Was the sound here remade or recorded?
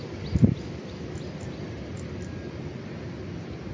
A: recorded